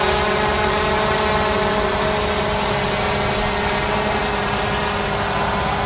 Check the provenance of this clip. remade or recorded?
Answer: recorded